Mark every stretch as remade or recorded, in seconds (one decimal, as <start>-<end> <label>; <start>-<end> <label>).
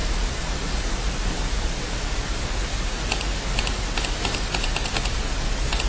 0.0-2.7 remade; 2.7-4.2 recorded; 4.2-5.9 remade